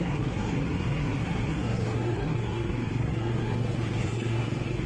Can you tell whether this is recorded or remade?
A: remade